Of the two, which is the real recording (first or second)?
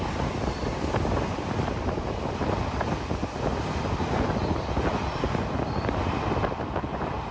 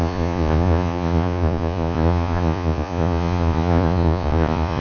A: first